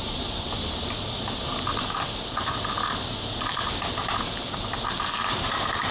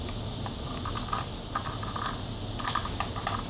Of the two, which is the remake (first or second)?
first